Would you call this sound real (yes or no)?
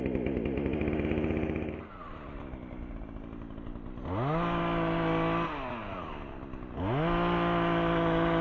yes